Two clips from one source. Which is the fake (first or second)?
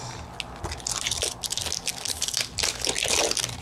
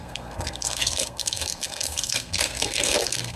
second